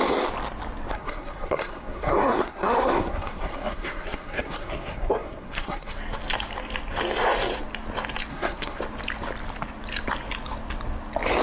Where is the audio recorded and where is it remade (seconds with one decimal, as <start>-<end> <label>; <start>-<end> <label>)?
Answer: 0.0-0.9 recorded; 0.9-6.0 remade; 6.0-8.3 recorded; 8.3-8.8 remade; 8.8-11.4 recorded